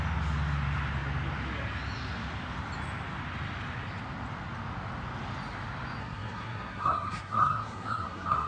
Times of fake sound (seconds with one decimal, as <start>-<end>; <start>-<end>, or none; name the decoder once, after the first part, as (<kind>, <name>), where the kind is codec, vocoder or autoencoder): 6.0-8.5 (codec, SNAC)